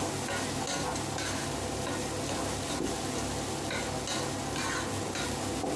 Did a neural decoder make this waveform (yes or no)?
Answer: no